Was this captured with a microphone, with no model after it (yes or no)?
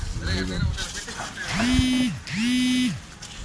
yes